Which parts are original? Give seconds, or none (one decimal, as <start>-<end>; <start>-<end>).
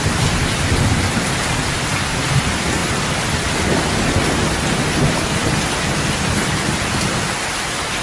0.0-8.0